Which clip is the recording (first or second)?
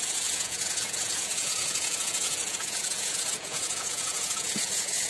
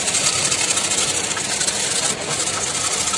second